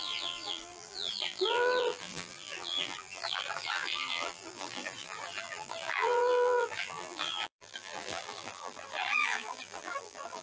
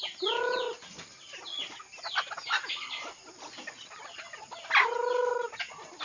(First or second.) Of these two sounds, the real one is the second